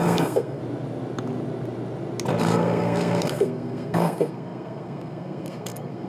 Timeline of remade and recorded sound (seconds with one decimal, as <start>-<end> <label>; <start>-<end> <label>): 0.0-0.6 remade; 0.6-2.4 recorded; 2.4-6.1 remade